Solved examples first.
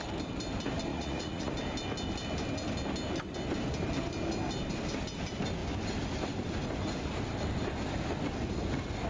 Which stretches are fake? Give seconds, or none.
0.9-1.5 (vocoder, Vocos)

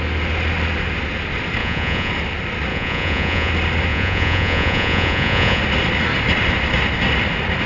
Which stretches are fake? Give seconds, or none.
1.6-2.1 (vocoder, Vocos); 2.7-3.5; 3.9-5.6

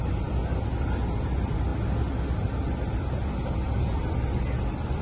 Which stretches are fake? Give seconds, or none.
none

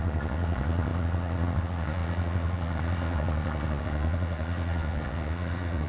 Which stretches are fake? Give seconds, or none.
0.0-5.9 (vocoder, Vocos)

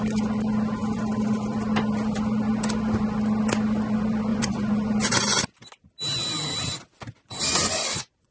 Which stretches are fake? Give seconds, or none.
4.3-5.4 (vocoder, Vocos); 7.6-8.3